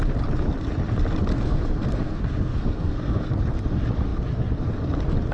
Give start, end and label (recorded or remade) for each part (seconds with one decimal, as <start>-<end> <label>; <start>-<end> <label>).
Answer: 0.0-1.3 recorded; 1.3-3.3 remade; 3.3-5.3 recorded